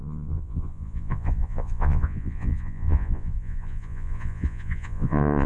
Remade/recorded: remade